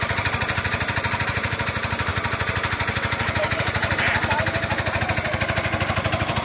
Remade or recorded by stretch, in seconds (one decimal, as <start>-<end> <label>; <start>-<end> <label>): 0.0-6.4 remade